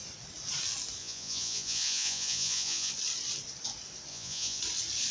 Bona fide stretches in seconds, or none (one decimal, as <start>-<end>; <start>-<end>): 0.0-1.0; 2.9-4.1; 4.6-5.1